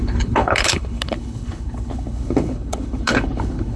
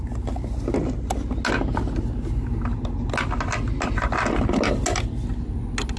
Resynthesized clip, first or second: first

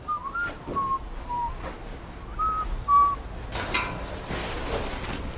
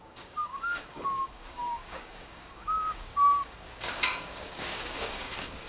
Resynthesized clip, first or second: second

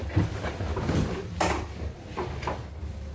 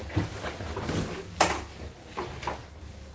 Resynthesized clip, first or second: first